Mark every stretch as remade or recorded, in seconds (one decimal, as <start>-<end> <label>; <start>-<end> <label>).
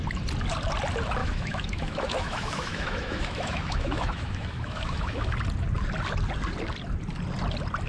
0.0-1.2 recorded; 1.2-5.3 remade; 5.3-7.9 recorded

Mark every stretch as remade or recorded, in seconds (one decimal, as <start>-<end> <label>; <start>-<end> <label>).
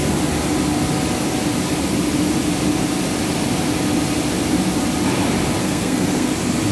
0.0-5.6 recorded; 5.6-6.3 remade; 6.3-6.7 recorded